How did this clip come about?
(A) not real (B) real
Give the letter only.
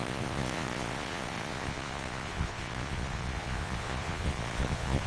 A